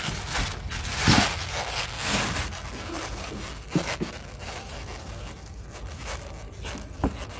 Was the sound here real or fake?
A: real